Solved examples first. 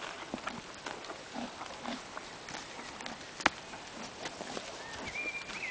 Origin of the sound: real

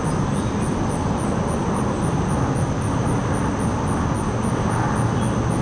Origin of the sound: real